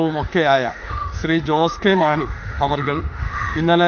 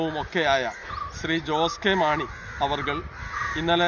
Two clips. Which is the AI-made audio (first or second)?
first